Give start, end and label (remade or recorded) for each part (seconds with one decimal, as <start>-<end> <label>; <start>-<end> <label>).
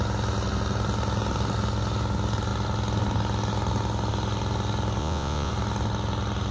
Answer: 0.0-5.0 recorded; 5.0-5.5 remade; 5.5-6.5 recorded